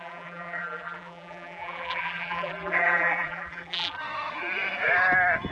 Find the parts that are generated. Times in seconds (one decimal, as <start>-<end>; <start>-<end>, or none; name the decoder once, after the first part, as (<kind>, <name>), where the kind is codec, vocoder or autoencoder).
0.0-4.0 (vocoder, BigVGAN v2)